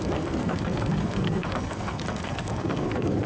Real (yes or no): no